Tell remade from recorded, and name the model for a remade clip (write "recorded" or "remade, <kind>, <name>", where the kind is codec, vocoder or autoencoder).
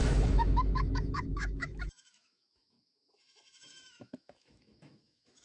remade, autoencoder, DAC-VAE